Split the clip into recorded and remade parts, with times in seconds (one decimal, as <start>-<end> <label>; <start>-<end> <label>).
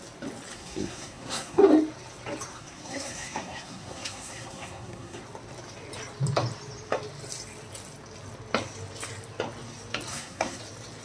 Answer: 0.0-0.5 recorded; 0.5-1.6 remade; 1.6-2.5 recorded; 2.5-5.2 remade; 5.2-10.1 recorded; 10.1-10.6 remade; 10.6-11.0 recorded